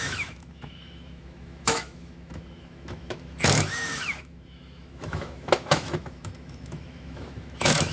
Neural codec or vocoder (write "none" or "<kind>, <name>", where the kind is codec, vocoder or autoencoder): autoencoder, DAC-VAE